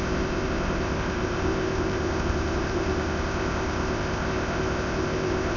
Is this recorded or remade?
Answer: remade